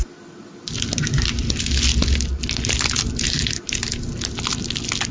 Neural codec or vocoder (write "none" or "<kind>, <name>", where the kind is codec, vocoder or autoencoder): none